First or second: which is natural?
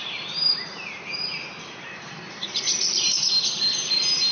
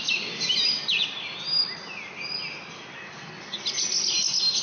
second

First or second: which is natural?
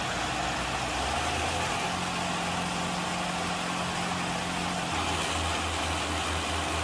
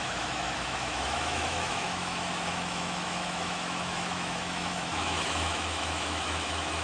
first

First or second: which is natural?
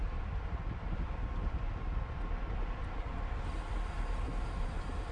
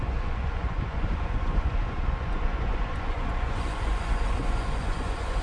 first